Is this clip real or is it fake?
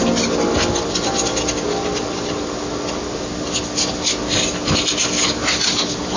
real